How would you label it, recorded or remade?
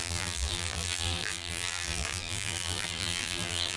remade